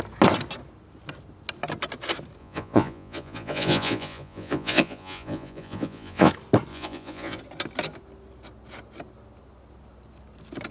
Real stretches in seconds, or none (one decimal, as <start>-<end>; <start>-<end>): 0.0-2.4; 6.3-6.7; 7.4-10.7